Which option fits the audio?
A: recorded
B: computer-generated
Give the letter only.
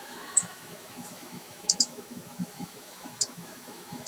B